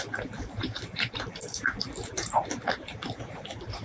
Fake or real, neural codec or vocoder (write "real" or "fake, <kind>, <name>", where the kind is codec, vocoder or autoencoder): fake, vocoder, BigVGAN v2